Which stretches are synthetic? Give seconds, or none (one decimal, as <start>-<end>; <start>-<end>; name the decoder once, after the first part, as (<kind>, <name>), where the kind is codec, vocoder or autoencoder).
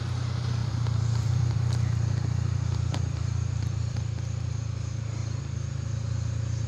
0.6-4.0 (vocoder, BigVGAN v2)